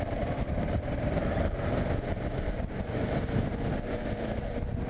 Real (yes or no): no